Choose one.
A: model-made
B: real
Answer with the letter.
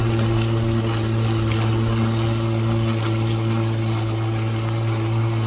B